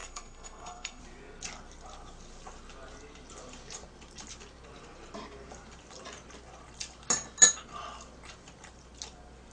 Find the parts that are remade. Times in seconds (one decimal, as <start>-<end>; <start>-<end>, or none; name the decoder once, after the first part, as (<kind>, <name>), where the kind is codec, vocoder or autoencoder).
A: 0.0-1.0 (codec, SNAC)